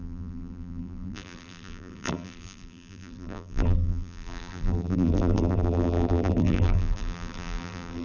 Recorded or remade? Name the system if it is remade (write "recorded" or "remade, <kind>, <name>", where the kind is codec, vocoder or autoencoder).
remade, vocoder, BigVGAN v2